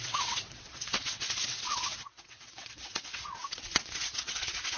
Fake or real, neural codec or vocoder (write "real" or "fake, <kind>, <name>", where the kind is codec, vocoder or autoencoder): fake, vocoder, WaveNeXt